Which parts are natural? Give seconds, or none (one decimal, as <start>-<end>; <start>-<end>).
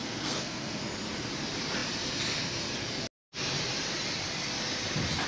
0.8-5.3